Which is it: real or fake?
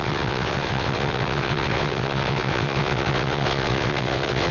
fake